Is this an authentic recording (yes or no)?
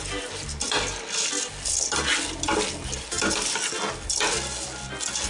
yes